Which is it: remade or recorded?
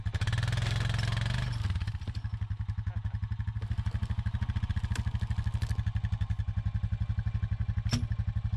recorded